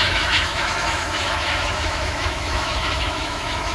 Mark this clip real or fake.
fake